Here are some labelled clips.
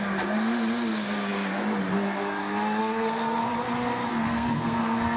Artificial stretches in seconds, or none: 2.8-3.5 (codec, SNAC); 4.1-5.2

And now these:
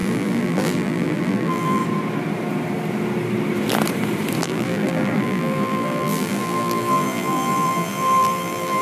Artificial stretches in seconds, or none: 0.0-1.8 (vocoder, BigVGAN v2); 4.4-8.8